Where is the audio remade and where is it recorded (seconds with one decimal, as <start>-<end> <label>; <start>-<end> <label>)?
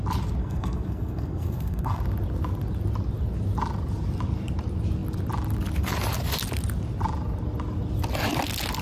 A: 0.0-0.4 recorded; 0.4-2.0 remade; 2.0-8.8 recorded